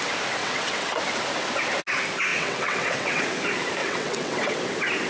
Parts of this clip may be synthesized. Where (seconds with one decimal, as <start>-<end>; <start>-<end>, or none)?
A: 0.4-1.0; 2.3-3.2; 3.8-4.6